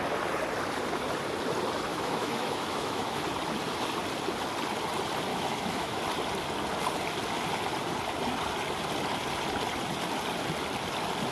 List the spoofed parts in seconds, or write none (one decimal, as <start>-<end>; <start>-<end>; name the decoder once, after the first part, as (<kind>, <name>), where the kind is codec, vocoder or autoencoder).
1.9-3.2 (autoencoder, DAC-VAE); 5.3-6.0

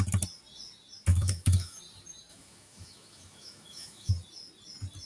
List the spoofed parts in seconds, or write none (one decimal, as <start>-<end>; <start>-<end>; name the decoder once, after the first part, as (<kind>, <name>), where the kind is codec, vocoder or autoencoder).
1.1-1.8 (autoencoder, DAC-VAE); 2.3-4.1

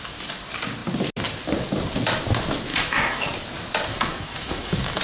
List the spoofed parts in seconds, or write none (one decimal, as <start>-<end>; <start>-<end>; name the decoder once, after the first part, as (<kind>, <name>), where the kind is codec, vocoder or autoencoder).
2.7-3.3 (autoencoder, DAC-VAE); 3.9-5.0